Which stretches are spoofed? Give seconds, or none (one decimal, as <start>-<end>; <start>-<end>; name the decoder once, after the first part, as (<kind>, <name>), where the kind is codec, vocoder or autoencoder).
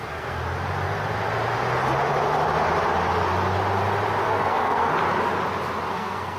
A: 0.0-0.4 (codec, SNAC); 4.2-4.9; 5.9-6.4